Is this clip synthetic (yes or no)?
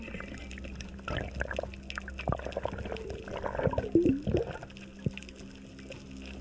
no